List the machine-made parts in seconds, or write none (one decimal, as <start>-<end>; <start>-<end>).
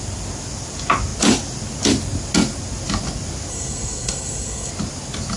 3.5-4.7